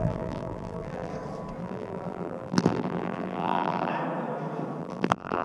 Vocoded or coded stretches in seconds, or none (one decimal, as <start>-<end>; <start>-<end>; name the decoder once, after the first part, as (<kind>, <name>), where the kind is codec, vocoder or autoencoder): 0.0-1.1 (vocoder, BigVGAN v2); 1.6-3.9; 4.8-5.4